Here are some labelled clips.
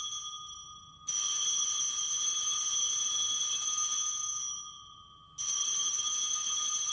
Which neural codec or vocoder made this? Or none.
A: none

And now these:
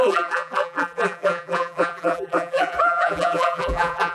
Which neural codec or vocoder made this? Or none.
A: vocoder, BigVGAN v2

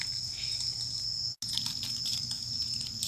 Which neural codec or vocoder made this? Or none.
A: none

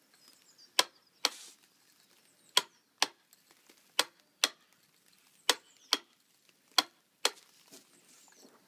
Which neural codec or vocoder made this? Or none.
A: none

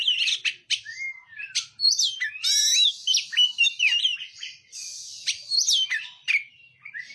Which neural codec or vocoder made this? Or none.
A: vocoder, BigVGAN v2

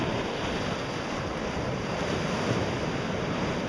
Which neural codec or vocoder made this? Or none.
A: none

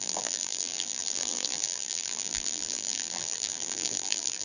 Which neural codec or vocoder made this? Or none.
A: vocoder, BigVGAN v2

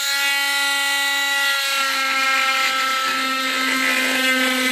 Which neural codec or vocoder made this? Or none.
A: none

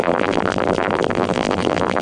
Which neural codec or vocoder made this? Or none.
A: vocoder, BigVGAN v2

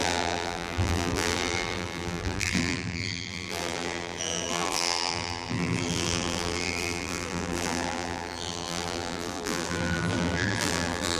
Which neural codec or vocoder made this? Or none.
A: vocoder, BigVGAN v2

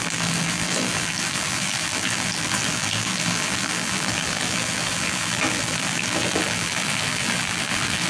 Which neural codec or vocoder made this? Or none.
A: vocoder, BigVGAN v2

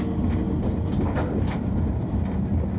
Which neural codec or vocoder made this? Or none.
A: none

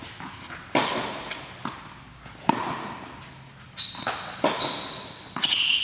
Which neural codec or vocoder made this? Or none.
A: none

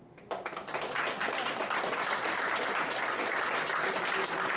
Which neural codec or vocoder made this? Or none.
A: none